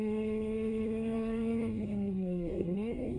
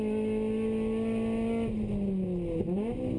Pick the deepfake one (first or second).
first